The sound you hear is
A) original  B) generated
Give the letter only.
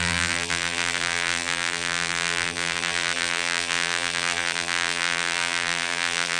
B